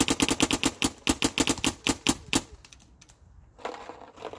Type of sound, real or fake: real